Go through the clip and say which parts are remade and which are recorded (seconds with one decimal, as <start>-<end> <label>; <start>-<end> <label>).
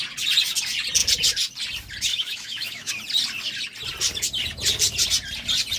0.0-2.1 recorded; 2.1-2.9 remade; 2.9-5.8 recorded